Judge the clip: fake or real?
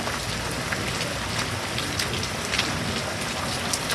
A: real